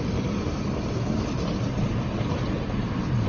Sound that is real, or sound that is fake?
real